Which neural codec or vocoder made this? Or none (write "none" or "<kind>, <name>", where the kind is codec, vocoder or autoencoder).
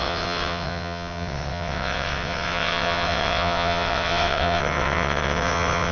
vocoder, WaveNeXt